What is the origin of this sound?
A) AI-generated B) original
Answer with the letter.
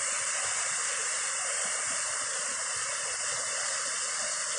B